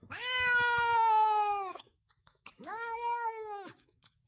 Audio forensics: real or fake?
fake